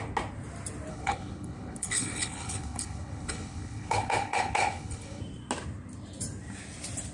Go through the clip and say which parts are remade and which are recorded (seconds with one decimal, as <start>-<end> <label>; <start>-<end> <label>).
0.0-0.9 recorded; 0.9-5.2 remade; 5.2-7.1 recorded